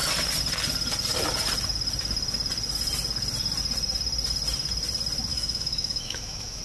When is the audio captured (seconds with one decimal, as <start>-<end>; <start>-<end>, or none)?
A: 0.0-5.3